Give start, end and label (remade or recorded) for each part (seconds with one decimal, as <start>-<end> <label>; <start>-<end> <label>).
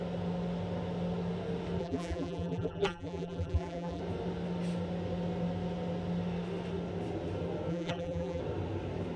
0.0-1.8 recorded; 1.8-4.0 remade; 4.0-7.7 recorded; 7.7-8.4 remade; 8.4-9.2 recorded